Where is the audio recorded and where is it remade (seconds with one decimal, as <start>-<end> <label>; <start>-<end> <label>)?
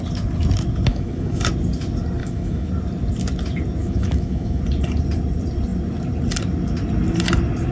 0.0-0.9 recorded; 0.9-1.4 remade; 1.4-2.2 recorded; 2.2-2.7 remade; 2.7-3.8 recorded; 3.8-4.6 remade; 4.6-7.7 recorded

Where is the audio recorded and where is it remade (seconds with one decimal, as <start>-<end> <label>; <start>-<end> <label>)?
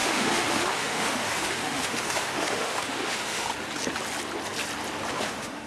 0.0-3.5 remade; 3.5-5.1 recorded; 5.1-5.7 remade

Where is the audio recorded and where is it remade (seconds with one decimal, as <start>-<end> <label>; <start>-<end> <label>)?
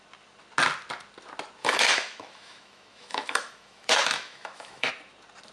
0.0-1.6 recorded; 1.6-4.9 remade; 4.9-5.5 recorded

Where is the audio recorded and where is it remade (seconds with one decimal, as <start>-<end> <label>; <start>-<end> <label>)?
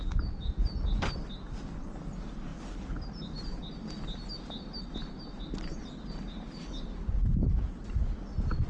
0.0-8.7 recorded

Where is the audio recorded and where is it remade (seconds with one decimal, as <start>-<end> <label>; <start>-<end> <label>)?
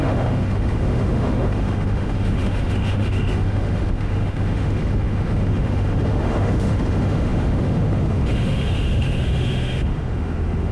0.0-10.7 remade